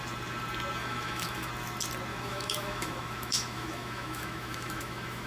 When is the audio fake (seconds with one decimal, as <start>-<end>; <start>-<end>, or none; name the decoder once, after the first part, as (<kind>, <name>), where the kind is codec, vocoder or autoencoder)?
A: 0.8-1.5 (autoencoder, DAC-VAE); 2.1-5.3